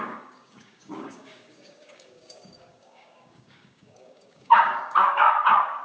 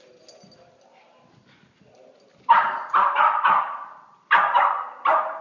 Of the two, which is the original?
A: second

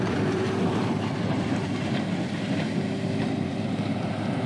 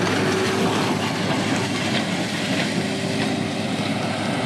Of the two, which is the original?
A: second